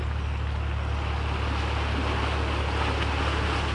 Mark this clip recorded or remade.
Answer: recorded